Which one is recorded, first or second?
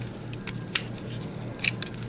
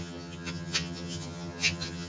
first